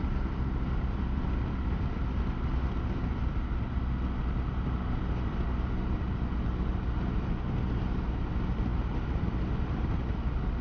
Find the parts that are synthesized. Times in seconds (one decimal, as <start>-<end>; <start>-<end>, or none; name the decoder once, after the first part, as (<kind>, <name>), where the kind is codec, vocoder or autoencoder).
none